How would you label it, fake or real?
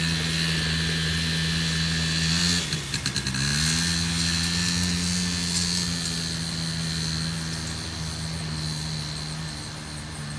real